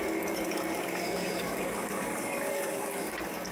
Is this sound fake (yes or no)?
yes